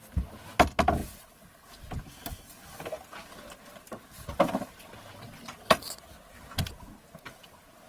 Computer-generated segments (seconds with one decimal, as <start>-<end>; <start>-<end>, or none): none